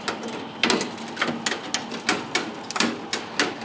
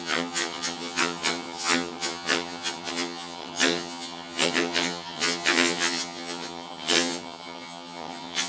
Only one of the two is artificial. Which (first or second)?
second